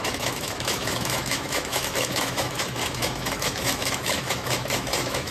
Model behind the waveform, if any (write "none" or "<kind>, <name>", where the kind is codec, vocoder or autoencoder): autoencoder, DAC-VAE